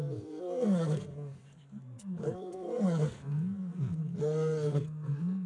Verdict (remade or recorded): remade